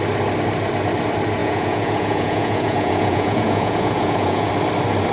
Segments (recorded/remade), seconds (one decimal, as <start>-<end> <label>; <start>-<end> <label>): 0.0-1.4 recorded; 1.4-4.5 remade; 4.5-5.1 recorded